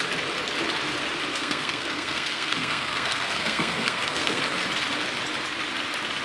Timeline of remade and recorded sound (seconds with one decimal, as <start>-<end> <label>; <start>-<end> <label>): 0.0-1.3 recorded; 1.3-4.4 remade; 4.4-6.2 recorded